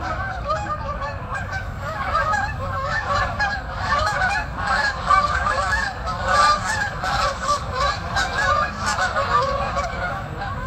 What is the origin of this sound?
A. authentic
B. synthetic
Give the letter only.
B